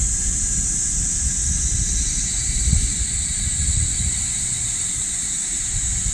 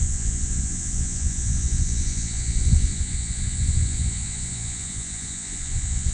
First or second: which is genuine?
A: first